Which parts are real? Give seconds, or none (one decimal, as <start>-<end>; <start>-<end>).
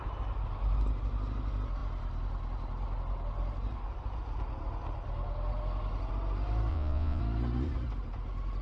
0.0-6.7; 7.2-8.6